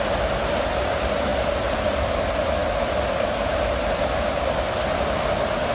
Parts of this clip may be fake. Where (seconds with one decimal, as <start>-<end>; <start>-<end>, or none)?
none